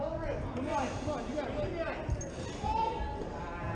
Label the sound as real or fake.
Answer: real